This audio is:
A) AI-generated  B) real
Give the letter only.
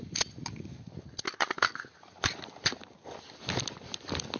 B